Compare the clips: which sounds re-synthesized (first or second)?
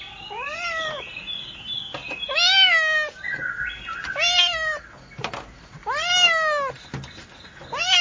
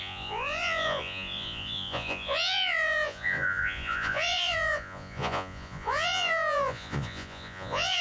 second